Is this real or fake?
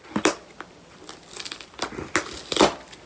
real